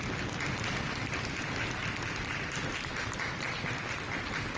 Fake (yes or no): no